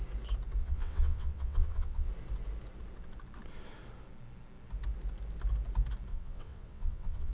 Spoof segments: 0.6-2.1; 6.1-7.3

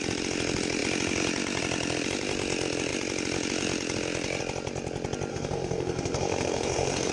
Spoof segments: 5.3-7.1

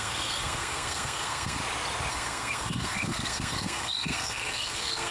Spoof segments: 0.0-1.6; 2.1-5.1

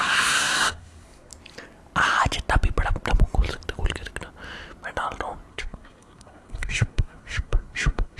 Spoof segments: 0.0-1.3; 5.5-8.2

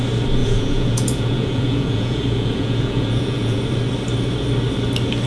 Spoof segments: 0.4-3.6

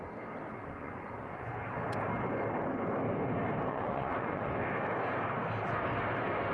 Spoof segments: 0.5-1.5; 3.7-4.5